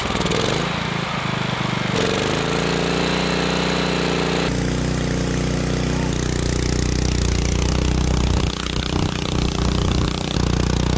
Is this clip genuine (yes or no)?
yes